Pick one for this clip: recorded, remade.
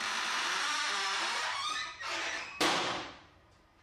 remade